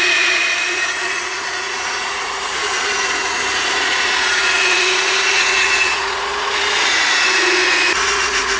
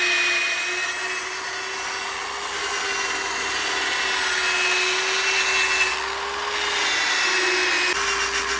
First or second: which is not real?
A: first